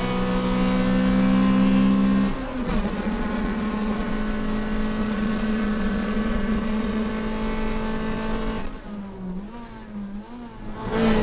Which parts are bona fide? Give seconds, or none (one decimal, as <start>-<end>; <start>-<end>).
0.0-2.5; 4.1-5.0; 7.1-11.2